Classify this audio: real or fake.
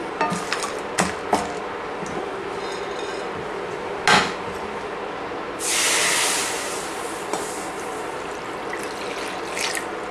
real